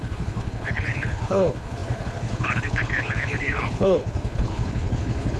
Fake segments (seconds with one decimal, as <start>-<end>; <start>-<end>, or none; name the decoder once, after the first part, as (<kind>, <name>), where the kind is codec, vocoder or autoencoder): 0.0-5.4 (codec, HILCodec)